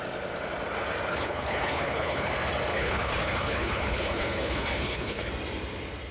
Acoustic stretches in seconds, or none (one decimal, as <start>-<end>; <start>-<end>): 0.0-1.1; 2.3-2.7; 5.3-6.1